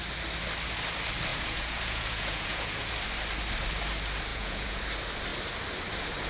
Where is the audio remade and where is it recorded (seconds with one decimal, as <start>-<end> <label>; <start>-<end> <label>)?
0.0-1.3 recorded; 1.3-2.9 remade; 2.9-4.3 recorded; 4.3-4.8 remade; 4.8-6.3 recorded